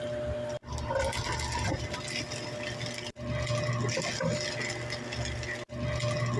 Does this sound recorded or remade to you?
recorded